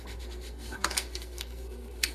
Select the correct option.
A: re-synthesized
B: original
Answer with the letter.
A